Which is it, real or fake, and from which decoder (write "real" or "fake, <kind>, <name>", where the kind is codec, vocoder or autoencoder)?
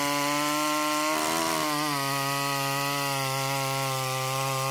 real